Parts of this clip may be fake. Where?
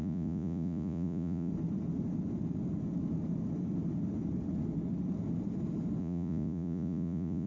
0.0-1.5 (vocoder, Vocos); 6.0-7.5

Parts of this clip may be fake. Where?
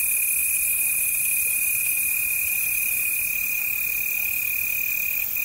0.4-3.6 (vocoder, BigVGAN v2)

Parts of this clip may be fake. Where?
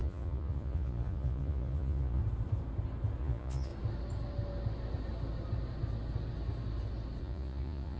0.0-2.2 (vocoder, Vocos); 3.2-3.7; 7.2-8.0